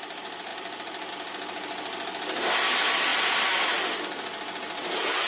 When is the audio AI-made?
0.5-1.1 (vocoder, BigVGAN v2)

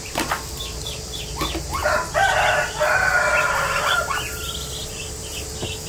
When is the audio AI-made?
4.8-5.9 (vocoder, BigVGAN v2)